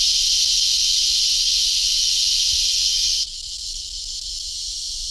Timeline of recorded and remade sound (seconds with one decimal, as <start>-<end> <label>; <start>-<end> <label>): 0.0-5.1 recorded